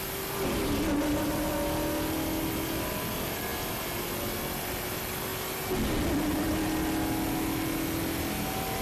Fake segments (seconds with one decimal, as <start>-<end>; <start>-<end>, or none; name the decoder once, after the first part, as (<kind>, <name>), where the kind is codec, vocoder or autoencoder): 0.0-5.3 (vocoder, BigVGAN v2); 6.0-8.8